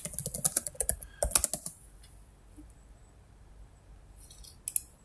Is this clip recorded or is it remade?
recorded